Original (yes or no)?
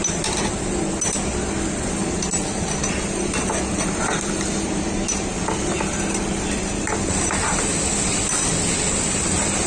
yes